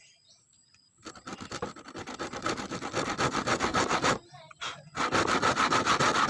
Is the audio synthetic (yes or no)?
no